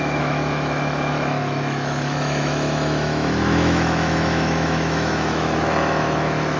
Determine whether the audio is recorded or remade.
remade